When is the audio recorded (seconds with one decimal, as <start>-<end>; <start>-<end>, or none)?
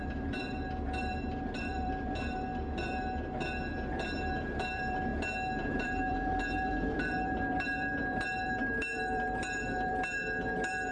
2.5-3.9; 5.1-5.7